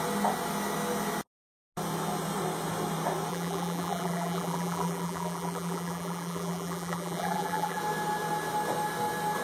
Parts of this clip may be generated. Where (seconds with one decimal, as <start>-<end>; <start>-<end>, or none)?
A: 3.3-7.8